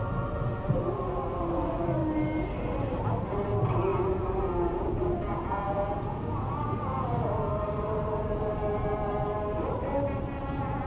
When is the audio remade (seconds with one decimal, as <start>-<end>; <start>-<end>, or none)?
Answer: 3.9-7.5